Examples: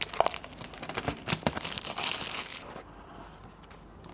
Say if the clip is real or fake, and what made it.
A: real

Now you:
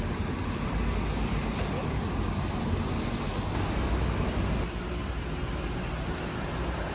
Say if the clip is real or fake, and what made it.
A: real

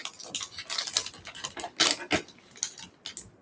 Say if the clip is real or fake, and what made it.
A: real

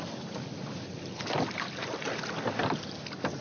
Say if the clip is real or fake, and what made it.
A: real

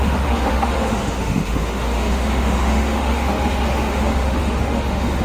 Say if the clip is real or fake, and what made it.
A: fake, autoencoder, DAC-VAE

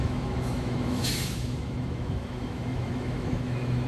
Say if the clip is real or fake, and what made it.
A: fake, autoencoder, DAC-VAE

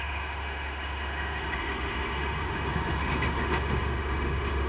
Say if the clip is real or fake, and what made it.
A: fake, autoencoder, DAC-VAE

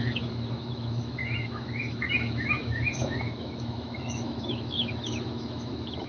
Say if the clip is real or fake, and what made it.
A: fake, autoencoder, DAC-VAE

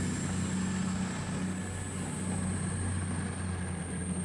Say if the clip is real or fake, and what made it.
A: real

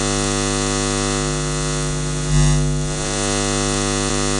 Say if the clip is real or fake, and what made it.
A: real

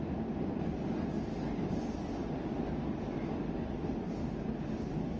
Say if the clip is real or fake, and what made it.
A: real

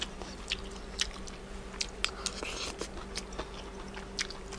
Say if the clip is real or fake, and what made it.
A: real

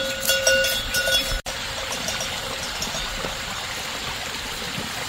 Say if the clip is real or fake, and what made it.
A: real